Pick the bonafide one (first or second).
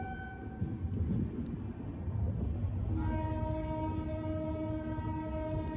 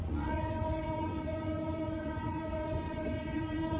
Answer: first